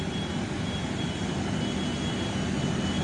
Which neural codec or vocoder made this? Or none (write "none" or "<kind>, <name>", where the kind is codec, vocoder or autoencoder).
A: none